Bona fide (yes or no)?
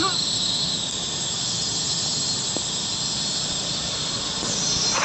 yes